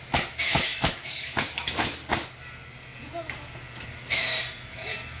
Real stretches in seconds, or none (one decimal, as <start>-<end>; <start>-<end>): 2.0-5.2